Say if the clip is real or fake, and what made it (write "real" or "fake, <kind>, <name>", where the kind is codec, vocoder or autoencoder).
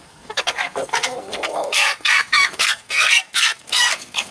fake, codec, SNAC